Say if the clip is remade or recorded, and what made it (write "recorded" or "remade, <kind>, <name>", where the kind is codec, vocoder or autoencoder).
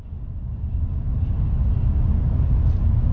recorded